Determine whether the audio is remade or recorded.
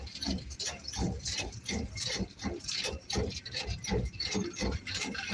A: remade